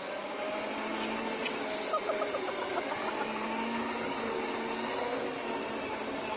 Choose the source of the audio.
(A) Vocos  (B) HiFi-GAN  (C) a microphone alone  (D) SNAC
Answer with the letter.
C